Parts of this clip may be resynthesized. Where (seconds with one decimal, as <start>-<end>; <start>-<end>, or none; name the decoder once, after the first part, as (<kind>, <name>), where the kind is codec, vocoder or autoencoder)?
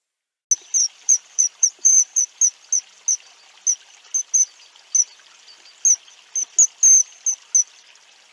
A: 0.8-2.4 (vocoder, BigVGAN v2)